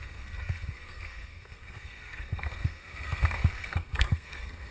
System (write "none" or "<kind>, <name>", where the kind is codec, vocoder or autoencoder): codec, SNAC